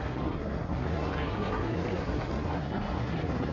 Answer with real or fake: fake